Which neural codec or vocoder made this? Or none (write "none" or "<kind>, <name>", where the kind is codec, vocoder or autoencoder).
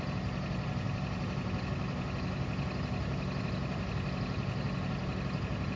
none